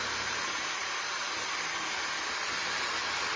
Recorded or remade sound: recorded